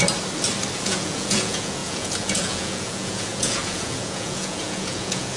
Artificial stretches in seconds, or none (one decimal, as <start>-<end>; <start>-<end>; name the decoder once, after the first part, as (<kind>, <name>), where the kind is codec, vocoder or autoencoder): 0.8-5.4 (vocoder, Vocos)